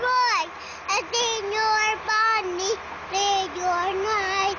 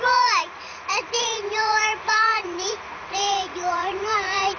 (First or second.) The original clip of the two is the first